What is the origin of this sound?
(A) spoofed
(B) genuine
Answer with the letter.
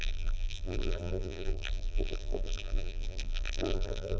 A